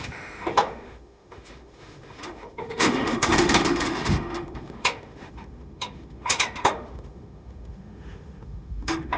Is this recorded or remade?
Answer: remade